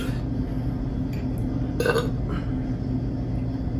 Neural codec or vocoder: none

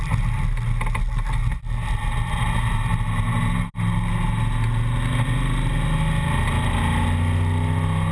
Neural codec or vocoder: none